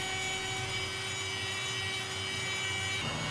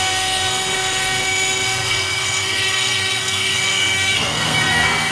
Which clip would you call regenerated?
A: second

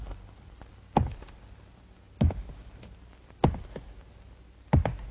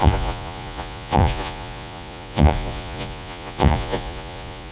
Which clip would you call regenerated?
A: second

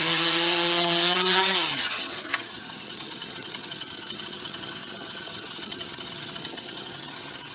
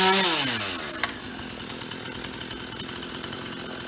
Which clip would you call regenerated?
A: first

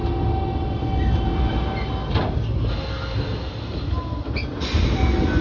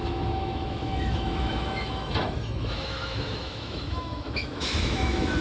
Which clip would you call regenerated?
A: second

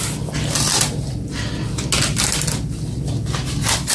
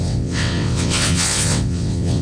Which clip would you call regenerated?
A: second